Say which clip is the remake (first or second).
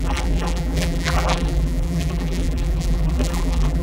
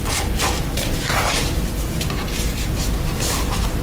first